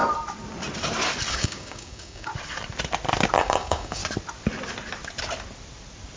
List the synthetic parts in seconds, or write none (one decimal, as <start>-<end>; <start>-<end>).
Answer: 1.3-2.3; 3.4-4.0